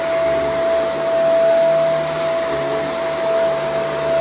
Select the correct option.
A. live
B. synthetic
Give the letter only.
A